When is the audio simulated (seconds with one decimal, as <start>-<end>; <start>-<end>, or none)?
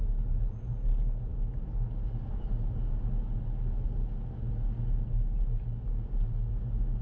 none